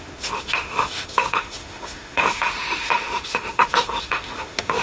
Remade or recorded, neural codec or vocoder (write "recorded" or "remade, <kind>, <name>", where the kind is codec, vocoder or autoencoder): remade, autoencoder, DAC-VAE